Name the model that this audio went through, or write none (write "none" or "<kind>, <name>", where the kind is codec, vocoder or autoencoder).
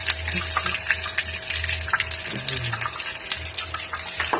none